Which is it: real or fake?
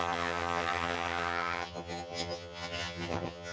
fake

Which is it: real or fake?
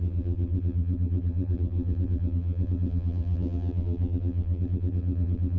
fake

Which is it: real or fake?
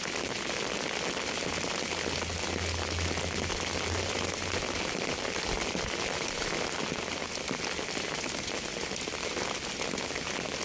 real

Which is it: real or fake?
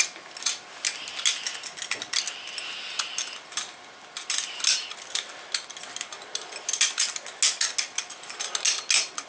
real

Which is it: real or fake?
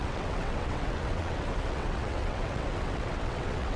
fake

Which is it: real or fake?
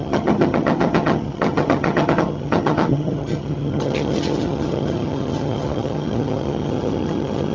fake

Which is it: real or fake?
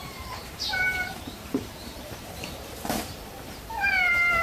fake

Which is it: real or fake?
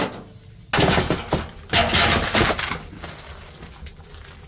real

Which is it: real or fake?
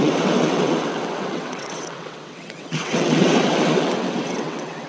fake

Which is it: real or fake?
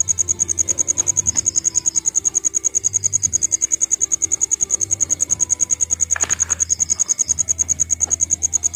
real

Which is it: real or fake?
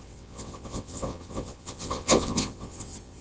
fake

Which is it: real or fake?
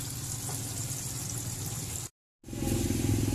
real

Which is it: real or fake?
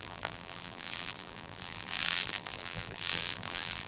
fake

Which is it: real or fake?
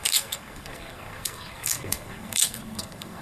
fake